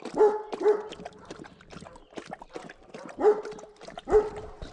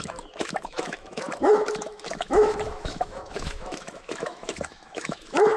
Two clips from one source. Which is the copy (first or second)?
second